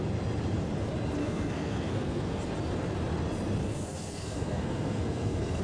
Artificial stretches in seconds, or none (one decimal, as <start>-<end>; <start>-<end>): 1.2-2.4; 3.6-5.6